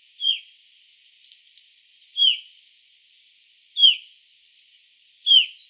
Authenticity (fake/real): real